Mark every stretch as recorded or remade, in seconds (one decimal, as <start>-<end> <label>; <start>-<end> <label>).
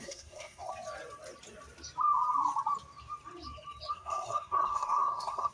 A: 0.0-0.7 remade; 0.7-3.9 recorded; 3.9-5.5 remade